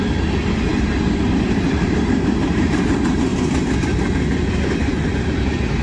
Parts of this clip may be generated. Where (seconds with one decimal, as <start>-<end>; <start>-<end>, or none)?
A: 0.0-0.7; 1.2-3.3; 5.2-5.8